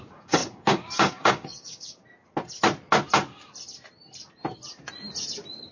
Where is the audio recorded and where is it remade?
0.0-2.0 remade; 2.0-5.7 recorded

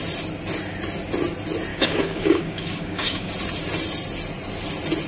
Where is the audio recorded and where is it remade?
0.0-1.7 recorded; 1.7-3.3 remade; 3.3-5.1 recorded

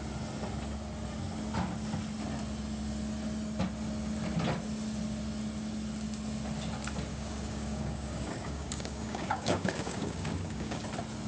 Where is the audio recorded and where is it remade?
0.0-7.1 recorded; 7.1-10.8 remade; 10.8-11.3 recorded

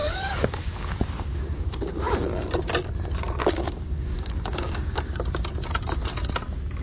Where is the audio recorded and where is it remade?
0.0-2.0 remade; 2.0-3.4 recorded; 3.4-5.0 remade; 5.0-6.8 recorded

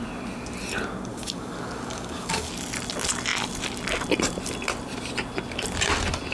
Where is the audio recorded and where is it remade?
0.0-1.1 recorded; 1.1-2.5 remade; 2.5-6.3 recorded

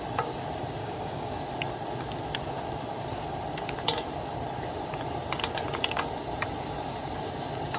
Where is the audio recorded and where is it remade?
0.0-0.8 recorded; 0.8-1.4 remade; 1.4-7.8 recorded

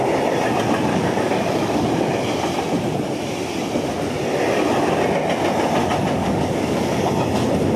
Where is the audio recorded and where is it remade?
0.0-0.9 recorded; 0.9-1.9 remade; 1.9-6.2 recorded; 6.2-7.1 remade; 7.1-7.8 recorded

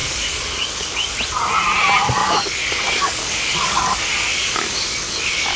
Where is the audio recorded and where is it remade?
0.0-1.1 remade; 1.1-2.2 recorded; 2.2-5.6 remade